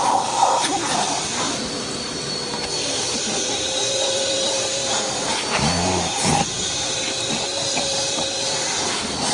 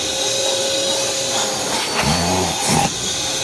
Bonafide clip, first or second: second